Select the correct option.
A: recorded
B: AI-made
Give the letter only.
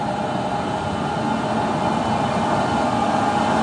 A